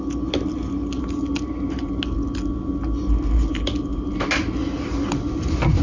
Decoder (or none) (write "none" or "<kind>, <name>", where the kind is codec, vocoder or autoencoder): none